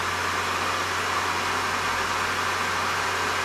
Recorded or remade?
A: recorded